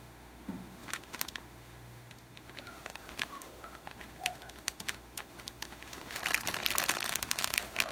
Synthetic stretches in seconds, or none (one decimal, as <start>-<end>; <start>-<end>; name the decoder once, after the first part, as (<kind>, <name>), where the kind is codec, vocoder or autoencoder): 0.0-6.2 (autoencoder, DAC-VAE); 7.1-7.9

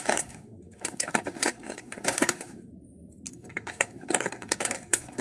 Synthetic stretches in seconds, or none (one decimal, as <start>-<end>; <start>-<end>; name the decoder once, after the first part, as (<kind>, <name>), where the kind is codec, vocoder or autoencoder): 0.0-2.7 (codec, SNAC); 3.3-5.2

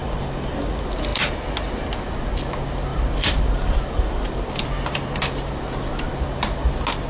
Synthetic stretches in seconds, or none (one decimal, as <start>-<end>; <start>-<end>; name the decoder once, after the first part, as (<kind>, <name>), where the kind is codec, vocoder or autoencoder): 0.0-0.6 (vocoder, BigVGAN v2); 2.9-5.2

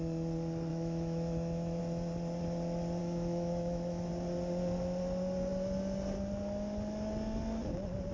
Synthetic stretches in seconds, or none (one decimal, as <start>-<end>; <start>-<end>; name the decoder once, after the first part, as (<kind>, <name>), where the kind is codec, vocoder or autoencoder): 0.7-1.8 (autoencoder, DAC-VAE); 3.0-4.1

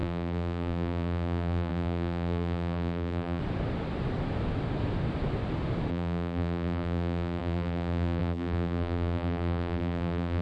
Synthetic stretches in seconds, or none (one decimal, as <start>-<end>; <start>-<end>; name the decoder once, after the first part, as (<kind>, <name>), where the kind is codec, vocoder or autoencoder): 0.0-3.4 (vocoder, BigVGAN v2); 5.9-10.4